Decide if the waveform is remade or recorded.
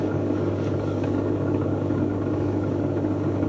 remade